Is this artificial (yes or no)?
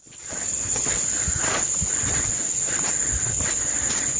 yes